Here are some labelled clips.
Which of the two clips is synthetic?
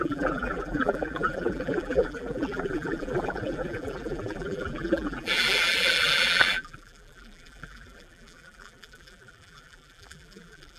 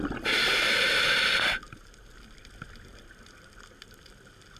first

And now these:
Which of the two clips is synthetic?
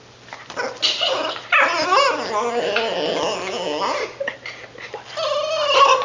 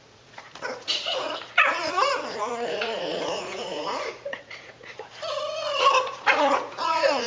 second